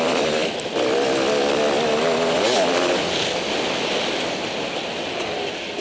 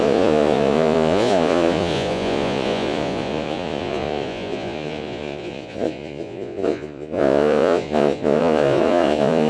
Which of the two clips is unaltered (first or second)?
first